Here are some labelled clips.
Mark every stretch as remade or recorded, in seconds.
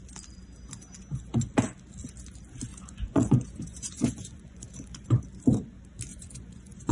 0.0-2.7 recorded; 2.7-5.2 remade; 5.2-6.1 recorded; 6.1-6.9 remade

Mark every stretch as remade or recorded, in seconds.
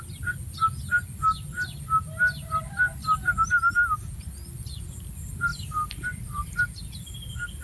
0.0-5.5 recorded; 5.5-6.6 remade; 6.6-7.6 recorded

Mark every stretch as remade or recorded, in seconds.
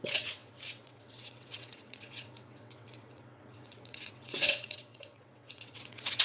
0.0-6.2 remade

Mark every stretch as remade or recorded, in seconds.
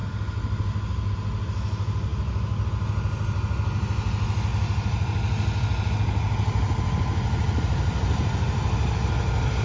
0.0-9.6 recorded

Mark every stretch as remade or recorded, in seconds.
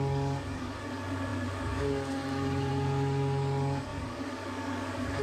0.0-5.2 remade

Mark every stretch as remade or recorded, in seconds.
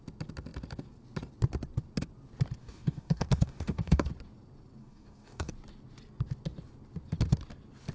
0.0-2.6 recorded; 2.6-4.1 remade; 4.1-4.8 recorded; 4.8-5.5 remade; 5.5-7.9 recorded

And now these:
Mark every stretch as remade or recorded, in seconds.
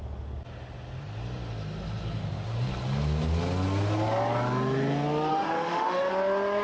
0.0-5.3 recorded; 5.3-6.1 remade; 6.1-6.6 recorded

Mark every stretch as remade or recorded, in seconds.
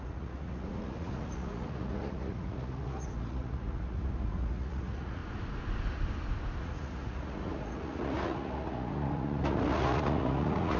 0.0-5.2 remade; 5.2-6.6 recorded; 6.6-10.8 remade